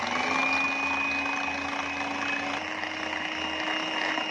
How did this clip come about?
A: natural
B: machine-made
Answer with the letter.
A